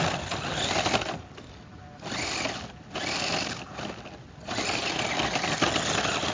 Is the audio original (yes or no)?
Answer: yes